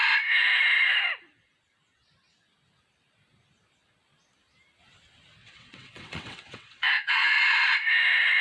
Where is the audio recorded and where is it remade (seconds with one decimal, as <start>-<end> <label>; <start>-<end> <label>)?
0.0-5.4 recorded; 5.4-7.4 remade; 7.4-8.4 recorded